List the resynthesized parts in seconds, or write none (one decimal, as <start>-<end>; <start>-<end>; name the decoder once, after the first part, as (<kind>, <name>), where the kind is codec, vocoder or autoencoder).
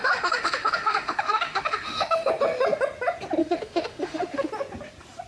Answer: 0.0-2.3 (autoencoder, DAC-VAE); 3.4-4.5